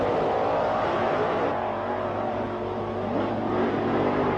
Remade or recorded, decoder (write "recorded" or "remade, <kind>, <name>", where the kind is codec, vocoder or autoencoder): remade, vocoder, BigVGAN v2